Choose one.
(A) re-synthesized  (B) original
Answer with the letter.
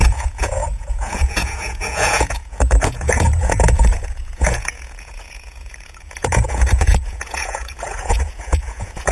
A